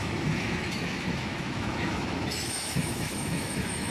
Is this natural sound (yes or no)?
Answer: no